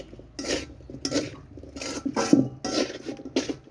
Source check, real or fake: real